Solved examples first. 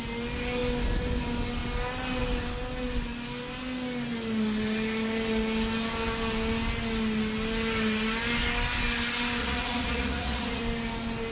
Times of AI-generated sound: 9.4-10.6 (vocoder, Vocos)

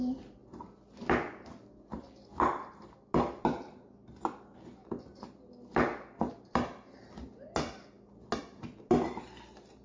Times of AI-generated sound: none

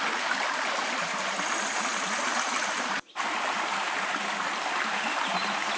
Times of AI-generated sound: none

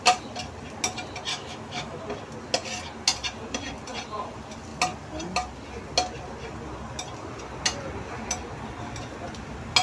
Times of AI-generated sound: 1.3-2.0 (autoencoder, DAC-VAE)

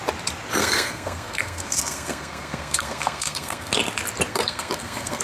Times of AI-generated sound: 0.6-3.7 (codec, SNAC); 4.3-5.2

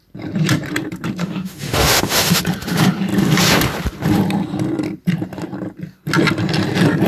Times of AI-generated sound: 1.2-2.4 (autoencoder, DAC-VAE)